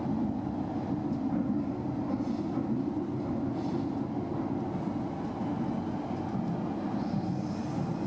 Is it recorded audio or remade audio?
recorded